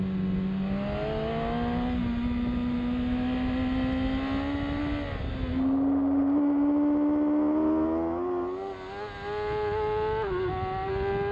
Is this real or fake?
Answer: real